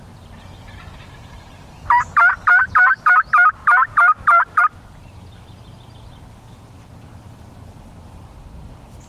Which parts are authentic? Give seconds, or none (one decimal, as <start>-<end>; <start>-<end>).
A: 0.0-9.1